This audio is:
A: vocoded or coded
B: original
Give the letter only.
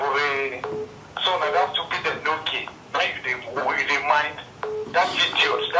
B